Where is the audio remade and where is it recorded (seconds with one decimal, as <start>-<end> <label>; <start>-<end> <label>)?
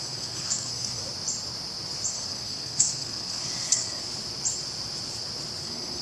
0.0-1.0 remade; 1.0-2.1 recorded; 2.1-4.0 remade; 4.0-5.6 recorded; 5.6-6.0 remade